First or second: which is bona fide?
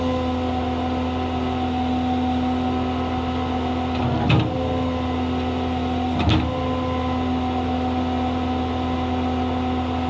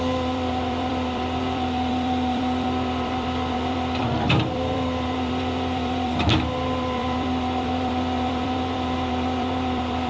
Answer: first